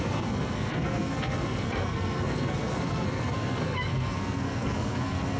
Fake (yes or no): yes